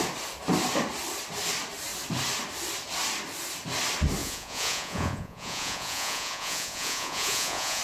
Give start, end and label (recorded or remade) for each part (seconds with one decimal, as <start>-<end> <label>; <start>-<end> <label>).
0.0-4.2 recorded; 4.2-7.8 remade